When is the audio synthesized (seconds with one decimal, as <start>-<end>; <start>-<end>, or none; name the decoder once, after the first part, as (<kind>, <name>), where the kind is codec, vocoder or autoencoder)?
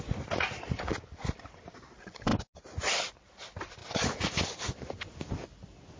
none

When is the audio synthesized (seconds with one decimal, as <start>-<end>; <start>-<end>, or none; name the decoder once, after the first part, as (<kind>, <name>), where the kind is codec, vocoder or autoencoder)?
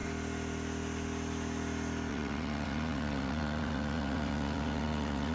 2.1-5.3 (vocoder, WaveNeXt)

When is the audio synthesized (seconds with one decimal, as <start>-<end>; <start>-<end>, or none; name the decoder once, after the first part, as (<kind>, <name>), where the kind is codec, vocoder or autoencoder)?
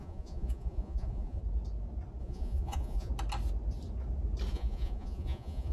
0.0-1.4 (vocoder, Vocos); 2.2-3.1; 4.5-5.7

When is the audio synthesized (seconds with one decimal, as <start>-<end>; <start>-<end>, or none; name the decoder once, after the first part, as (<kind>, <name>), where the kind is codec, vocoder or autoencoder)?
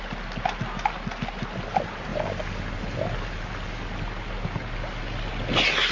none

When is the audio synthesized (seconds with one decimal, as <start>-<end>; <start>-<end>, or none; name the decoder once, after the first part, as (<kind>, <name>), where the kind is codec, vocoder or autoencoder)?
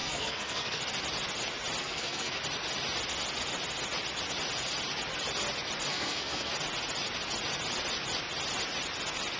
0.0-0.8 (codec, SNAC); 1.8-2.4; 5.9-6.5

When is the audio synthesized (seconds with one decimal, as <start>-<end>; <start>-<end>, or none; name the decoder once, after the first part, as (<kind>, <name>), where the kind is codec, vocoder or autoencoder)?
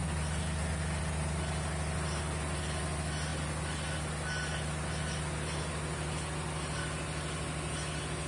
none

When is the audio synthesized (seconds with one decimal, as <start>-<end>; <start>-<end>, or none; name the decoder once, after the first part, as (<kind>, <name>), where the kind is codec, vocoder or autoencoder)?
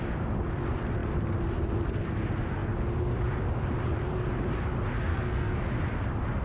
5.1-5.6 (codec, SNAC)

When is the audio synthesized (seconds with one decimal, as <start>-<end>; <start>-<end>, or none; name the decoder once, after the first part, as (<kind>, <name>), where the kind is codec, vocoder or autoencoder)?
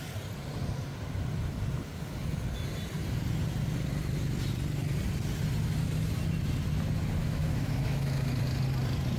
7.2-8.3 (autoencoder, DAC-VAE)